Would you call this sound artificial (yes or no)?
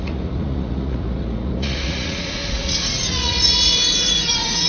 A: yes